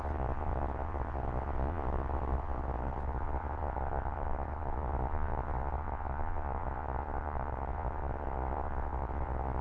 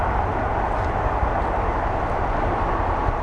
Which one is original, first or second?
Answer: second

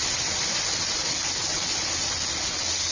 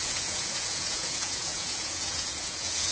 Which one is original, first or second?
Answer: first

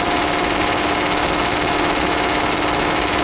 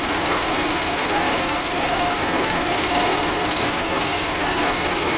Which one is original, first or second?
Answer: first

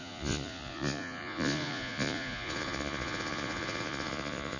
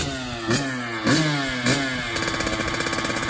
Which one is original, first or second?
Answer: second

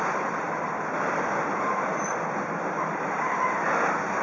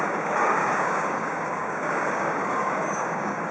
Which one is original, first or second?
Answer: first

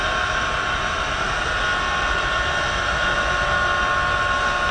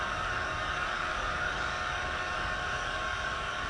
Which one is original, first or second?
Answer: first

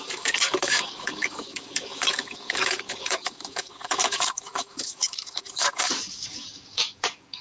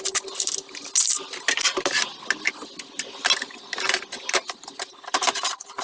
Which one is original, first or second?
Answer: second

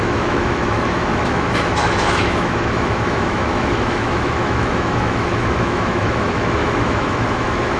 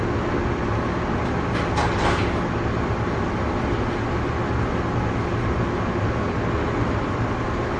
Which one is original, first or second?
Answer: second